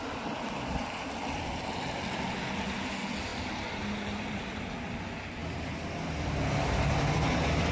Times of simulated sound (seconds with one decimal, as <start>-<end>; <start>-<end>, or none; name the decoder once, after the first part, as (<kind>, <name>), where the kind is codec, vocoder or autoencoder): 3.3-5.0 (vocoder, BigVGAN v2); 5.4-7.1